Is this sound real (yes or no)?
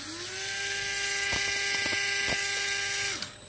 yes